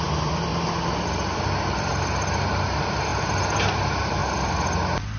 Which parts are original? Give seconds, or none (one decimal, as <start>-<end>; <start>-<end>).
0.5-1.8; 4.2-5.2